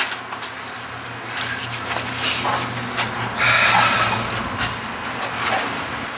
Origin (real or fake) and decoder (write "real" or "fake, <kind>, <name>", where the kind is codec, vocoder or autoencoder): real